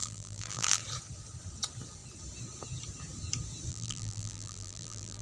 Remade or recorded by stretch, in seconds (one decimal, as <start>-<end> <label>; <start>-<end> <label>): 0.0-0.8 remade; 0.8-3.7 recorded; 3.7-5.2 remade